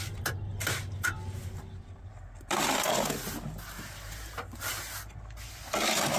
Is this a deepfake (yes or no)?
no